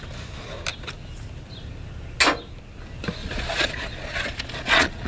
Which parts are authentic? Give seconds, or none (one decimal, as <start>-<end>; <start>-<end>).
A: 0.0-3.2